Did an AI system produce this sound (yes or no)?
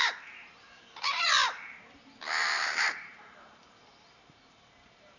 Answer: yes